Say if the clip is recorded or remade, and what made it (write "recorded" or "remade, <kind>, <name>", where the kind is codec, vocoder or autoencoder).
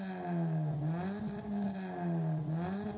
recorded